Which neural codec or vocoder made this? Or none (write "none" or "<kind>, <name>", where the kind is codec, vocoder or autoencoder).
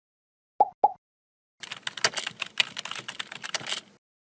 none